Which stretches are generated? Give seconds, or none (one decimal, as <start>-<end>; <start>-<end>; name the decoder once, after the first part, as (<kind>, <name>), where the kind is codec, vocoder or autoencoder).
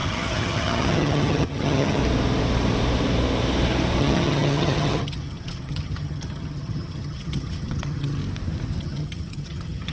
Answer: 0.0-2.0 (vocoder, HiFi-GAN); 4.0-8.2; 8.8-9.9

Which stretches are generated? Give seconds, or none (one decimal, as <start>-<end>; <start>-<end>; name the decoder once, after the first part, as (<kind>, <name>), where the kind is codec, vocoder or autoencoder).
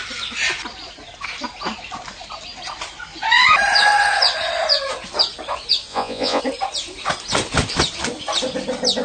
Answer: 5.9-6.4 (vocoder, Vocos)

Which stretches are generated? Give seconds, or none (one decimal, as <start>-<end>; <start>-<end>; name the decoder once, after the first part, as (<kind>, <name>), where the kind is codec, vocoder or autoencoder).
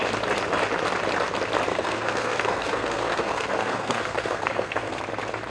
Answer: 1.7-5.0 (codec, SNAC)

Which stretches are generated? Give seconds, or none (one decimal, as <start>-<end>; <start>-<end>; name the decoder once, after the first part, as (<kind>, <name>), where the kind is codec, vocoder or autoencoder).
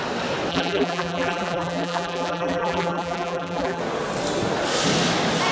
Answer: 0.5-3.8 (vocoder, BigVGAN v2)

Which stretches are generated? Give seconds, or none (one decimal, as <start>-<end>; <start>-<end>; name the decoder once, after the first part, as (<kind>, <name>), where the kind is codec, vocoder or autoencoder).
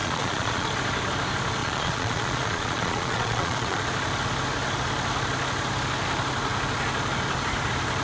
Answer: 0.0-0.7 (vocoder, Vocos); 1.6-3.8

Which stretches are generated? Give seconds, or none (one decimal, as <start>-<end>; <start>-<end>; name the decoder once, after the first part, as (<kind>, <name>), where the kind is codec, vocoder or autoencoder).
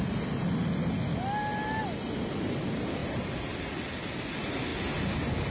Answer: none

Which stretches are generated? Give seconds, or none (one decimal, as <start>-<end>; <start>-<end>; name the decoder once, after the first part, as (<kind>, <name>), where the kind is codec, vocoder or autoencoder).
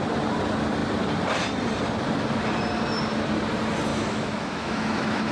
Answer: 3.9-5.3 (autoencoder, DAC-VAE)